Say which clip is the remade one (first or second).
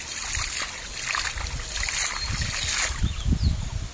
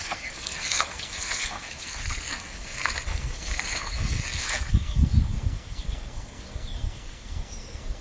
second